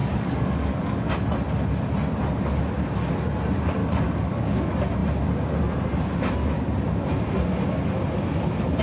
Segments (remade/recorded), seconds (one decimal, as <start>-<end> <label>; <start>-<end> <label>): 0.0-1.1 remade; 1.1-3.8 recorded; 3.8-4.6 remade; 4.6-8.8 recorded